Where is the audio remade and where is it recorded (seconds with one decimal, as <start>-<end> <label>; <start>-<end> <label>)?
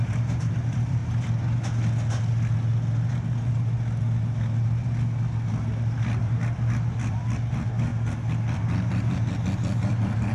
0.0-1.0 remade; 1.0-6.2 recorded; 6.2-7.9 remade; 7.9-8.4 recorded; 8.4-10.3 remade